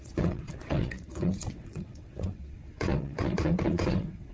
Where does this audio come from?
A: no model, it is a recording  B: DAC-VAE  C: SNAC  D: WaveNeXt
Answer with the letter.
D